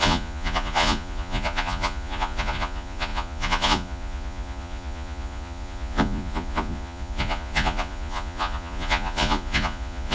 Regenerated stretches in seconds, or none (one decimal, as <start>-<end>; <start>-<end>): 0.0-10.1

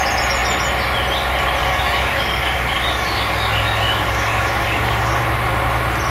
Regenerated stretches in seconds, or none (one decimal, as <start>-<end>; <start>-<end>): 1.6-5.2

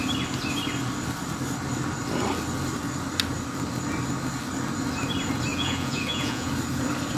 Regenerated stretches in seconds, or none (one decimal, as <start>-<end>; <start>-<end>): 5.5-6.5

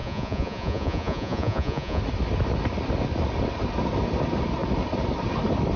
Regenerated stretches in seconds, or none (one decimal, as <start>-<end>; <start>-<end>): 0.0-2.0

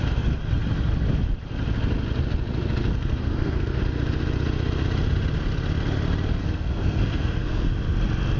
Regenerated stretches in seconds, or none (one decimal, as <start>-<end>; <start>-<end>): 2.9-3.8; 6.4-7.7